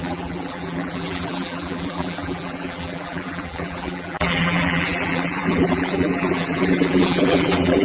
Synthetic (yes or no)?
yes